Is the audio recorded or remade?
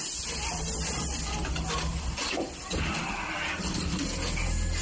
recorded